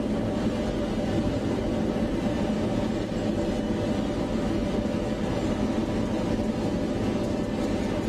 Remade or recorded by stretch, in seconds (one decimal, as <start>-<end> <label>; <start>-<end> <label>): 0.0-8.1 recorded